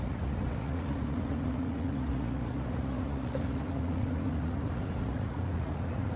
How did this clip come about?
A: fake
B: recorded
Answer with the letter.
A